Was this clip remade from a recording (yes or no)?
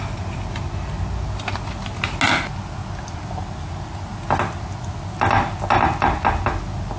no